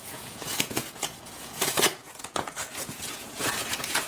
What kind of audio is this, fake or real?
fake